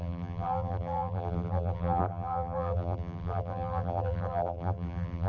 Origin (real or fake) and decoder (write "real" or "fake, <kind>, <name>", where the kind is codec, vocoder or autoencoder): fake, vocoder, BigVGAN v2